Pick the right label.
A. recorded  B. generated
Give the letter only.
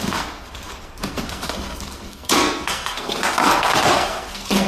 B